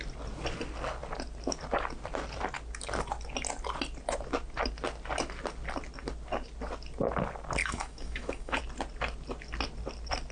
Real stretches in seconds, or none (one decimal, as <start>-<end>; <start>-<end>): 0.0-7.6; 8.6-10.3